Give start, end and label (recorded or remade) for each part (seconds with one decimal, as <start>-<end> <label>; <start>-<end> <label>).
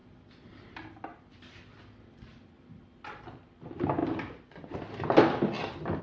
0.0-6.0 recorded